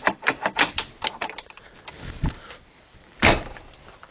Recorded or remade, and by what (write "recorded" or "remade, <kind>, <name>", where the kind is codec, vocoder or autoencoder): remade, vocoder, BigVGAN v2